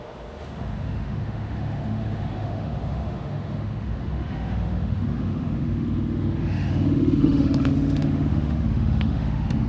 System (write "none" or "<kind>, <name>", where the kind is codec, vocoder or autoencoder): autoencoder, DAC-VAE